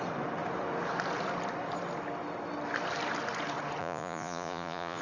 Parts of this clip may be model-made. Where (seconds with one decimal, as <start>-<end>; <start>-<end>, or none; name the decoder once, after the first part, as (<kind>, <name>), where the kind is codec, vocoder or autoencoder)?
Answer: 3.8-5.0 (vocoder, Vocos)